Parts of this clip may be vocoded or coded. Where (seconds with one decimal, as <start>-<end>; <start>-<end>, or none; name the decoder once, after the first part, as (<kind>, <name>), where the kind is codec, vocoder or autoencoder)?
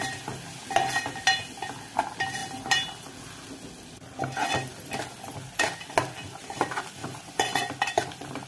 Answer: 7.0-7.6 (vocoder, Vocos)